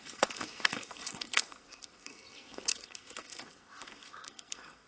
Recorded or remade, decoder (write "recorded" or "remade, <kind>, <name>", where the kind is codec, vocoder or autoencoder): remade, codec, SNAC